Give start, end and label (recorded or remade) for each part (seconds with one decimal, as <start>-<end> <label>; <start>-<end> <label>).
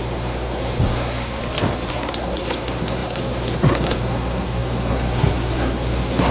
0.0-1.4 remade; 1.4-1.9 recorded; 1.9-6.3 remade